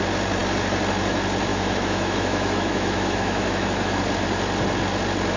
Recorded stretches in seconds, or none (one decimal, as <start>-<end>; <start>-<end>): 0.0-1.5; 4.0-5.4